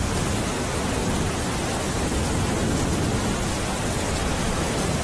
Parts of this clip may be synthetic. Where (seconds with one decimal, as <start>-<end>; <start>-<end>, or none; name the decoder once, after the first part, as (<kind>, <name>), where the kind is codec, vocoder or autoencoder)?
none